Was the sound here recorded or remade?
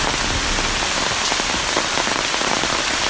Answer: recorded